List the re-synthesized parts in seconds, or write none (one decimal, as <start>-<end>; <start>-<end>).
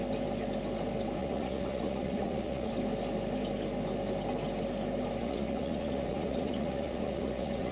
1.2-2.7; 5.2-7.7